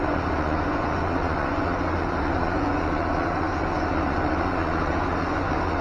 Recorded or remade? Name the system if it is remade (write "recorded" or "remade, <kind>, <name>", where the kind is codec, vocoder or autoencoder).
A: remade, vocoder, Vocos